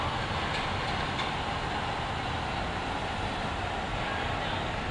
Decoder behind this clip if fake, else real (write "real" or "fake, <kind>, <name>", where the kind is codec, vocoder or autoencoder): real